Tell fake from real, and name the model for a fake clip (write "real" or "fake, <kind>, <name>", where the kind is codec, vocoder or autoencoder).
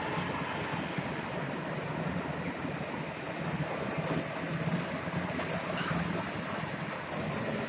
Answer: real